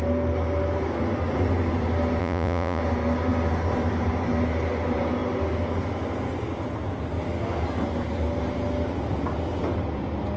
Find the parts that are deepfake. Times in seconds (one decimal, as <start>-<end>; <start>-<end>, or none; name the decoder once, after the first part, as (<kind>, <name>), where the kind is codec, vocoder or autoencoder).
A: 2.2-2.8 (vocoder, Vocos)